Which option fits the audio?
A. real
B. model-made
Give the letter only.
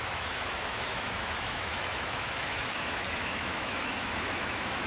B